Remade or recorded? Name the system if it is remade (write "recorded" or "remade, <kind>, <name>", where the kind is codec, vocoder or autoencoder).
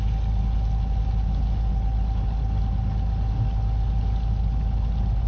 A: recorded